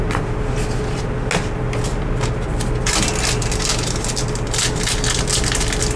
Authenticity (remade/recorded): recorded